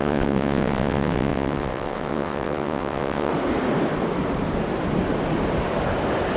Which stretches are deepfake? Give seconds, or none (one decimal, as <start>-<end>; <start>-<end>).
0.0-3.3